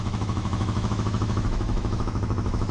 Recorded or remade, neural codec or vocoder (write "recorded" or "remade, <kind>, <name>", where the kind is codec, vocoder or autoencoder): remade, autoencoder, DAC-VAE